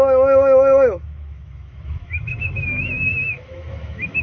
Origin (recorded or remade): remade